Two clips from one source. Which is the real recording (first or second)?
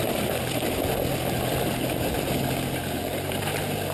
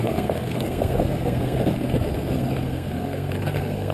first